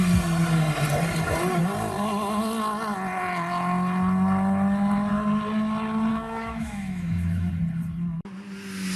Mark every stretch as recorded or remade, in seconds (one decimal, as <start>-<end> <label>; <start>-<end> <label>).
0.0-6.1 recorded; 6.1-7.5 remade; 7.5-9.0 recorded